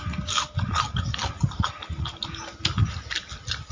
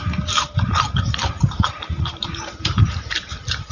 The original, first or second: first